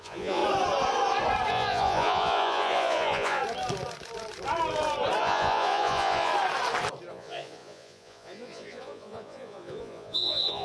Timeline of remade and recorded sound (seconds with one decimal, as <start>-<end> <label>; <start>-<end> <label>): 0.0-0.4 remade; 0.4-1.5 recorded; 1.5-3.4 remade; 3.4-5.2 recorded; 5.2-6.3 remade; 6.3-7.1 recorded; 7.1-10.6 remade